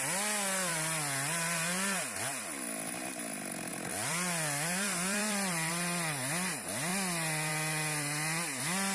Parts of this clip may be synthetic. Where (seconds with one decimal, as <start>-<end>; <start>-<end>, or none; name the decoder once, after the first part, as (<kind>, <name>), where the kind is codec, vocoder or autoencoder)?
0.7-2.6 (vocoder, BigVGAN v2); 3.7-5.7